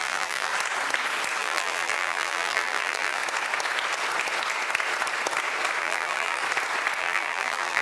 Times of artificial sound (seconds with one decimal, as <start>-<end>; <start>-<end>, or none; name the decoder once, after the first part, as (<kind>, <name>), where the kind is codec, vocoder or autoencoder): 0.0-0.5 (vocoder, BigVGAN v2); 1.4-3.2; 5.8-6.4; 7.0-7.8